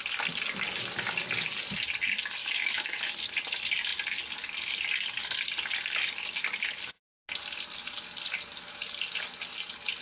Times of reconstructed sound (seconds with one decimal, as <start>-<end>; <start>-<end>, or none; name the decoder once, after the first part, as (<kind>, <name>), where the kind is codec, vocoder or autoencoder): 2.4-3.1 (autoencoder, DAC-VAE)